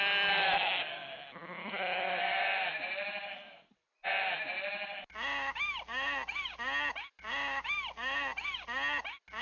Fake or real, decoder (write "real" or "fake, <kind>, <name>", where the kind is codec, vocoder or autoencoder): real